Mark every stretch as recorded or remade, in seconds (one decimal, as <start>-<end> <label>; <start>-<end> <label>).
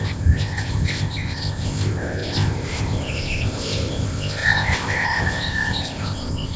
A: 0.0-6.6 remade